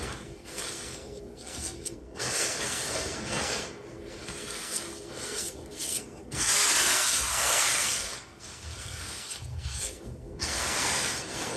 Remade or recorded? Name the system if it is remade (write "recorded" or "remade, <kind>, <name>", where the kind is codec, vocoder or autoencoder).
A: remade, codec, SNAC